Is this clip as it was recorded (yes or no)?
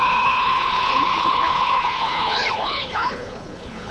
no